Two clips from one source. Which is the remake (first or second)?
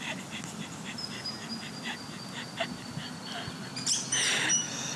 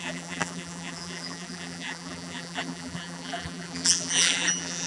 second